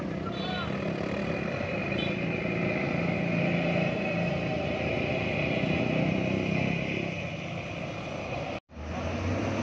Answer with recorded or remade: recorded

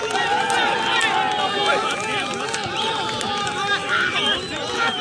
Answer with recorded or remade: recorded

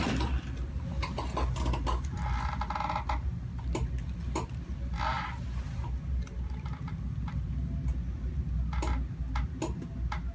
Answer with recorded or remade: recorded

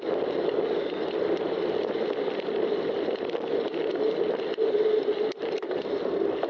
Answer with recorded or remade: recorded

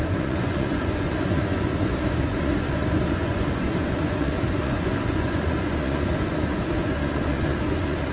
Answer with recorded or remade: remade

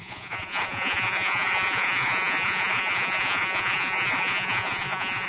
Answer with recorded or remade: remade